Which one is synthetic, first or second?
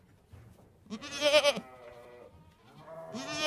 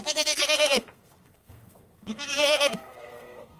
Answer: second